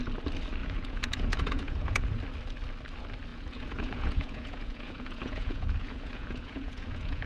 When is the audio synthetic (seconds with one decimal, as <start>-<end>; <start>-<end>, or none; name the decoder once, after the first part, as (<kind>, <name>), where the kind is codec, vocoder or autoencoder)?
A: 0.6-2.2 (vocoder, Vocos); 3.3-7.3